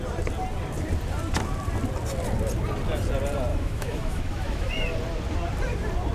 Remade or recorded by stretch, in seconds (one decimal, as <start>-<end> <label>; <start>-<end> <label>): 0.0-3.5 recorded; 3.5-4.7 remade; 4.7-6.1 recorded